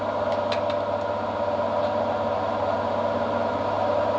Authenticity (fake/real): real